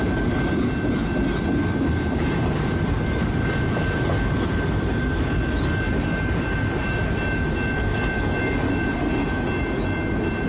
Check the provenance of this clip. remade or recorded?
recorded